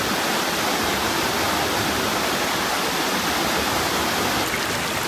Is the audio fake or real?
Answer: real